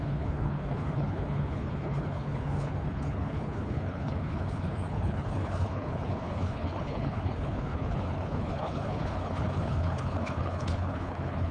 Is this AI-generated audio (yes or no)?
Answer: yes